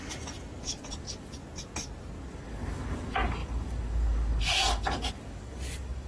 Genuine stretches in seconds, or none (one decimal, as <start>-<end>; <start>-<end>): 0.0-0.6; 1.4-2.3

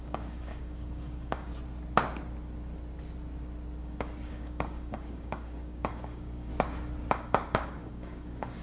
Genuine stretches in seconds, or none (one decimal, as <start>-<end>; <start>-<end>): 1.5-3.8; 6.5-7.1

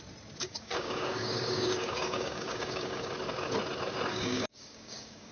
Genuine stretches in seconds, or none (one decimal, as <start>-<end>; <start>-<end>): 0.0-0.4; 3.1-4.1

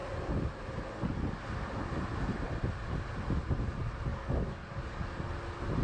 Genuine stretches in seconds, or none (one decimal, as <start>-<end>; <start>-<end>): 0.0-4.1; 5.3-5.8